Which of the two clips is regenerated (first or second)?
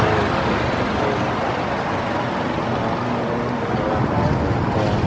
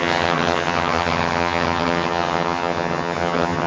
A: second